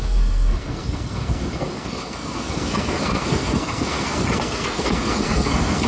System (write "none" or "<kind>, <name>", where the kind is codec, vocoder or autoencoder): codec, SNAC